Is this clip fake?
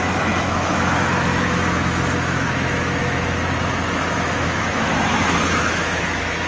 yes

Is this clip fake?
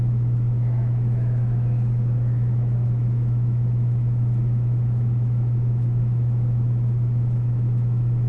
yes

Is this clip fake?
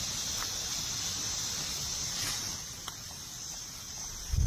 no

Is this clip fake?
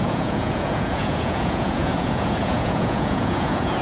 yes